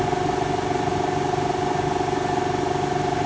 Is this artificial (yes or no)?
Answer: no